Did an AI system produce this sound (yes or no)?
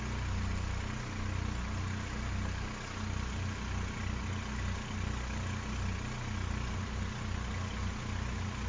no